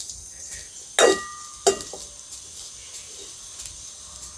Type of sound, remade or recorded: recorded